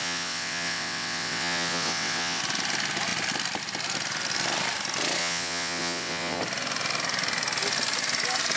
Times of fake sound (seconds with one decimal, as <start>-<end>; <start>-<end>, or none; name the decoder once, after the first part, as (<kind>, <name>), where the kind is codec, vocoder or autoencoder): 0.0-2.4 (vocoder, WaveNeXt); 5.2-6.4